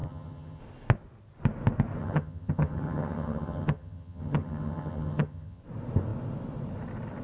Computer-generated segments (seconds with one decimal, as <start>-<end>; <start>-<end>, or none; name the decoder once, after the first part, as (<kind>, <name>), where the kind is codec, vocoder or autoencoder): 0.0-0.6 (vocoder, HiFi-GAN); 2.0-5.6